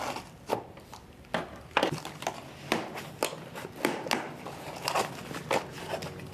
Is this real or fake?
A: real